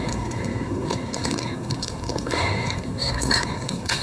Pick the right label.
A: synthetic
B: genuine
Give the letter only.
A